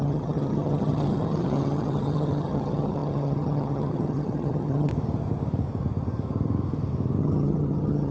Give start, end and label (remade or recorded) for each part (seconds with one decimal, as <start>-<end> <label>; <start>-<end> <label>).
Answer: 0.0-4.9 remade; 4.9-7.2 recorded; 7.2-8.1 remade

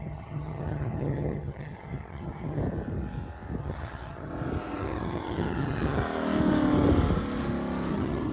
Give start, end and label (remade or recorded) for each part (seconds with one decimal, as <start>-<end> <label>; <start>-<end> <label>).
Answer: 0.0-2.6 remade; 2.6-3.6 recorded; 3.6-4.3 remade; 4.3-4.8 recorded; 4.8-6.0 remade; 6.0-7.9 recorded; 7.9-8.3 remade